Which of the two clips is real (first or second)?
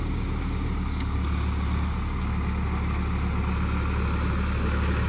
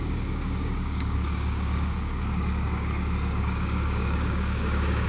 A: first